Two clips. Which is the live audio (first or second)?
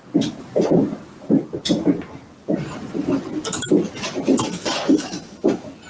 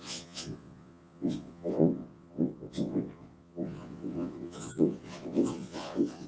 first